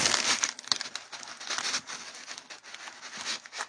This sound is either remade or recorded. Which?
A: recorded